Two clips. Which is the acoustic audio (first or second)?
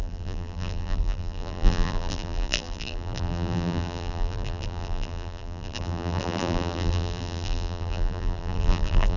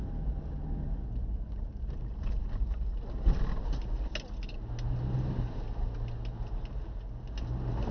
second